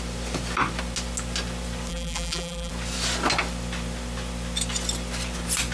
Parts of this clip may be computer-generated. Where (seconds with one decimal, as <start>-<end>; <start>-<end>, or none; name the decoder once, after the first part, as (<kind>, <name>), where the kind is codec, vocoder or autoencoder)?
1.9-2.7 (vocoder, BigVGAN v2)